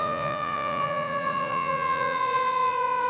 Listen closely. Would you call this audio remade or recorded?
remade